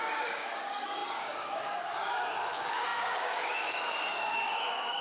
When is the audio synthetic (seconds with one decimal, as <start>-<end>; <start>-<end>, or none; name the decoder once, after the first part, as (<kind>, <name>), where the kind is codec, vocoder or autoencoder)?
0.0-5.0 (codec, DAC)